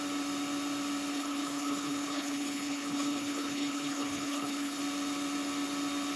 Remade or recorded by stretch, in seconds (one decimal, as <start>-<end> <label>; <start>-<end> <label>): 0.0-1.1 recorded; 1.1-4.8 remade; 4.8-6.2 recorded